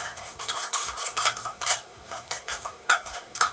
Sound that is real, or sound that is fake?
fake